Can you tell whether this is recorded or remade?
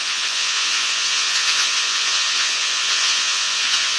remade